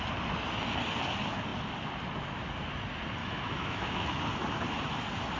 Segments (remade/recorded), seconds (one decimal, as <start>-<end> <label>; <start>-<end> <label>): 0.0-3.2 recorded; 3.2-4.2 remade; 4.2-5.4 recorded